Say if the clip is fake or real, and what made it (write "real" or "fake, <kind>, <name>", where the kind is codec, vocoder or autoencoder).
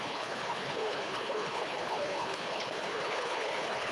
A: fake, codec, HILCodec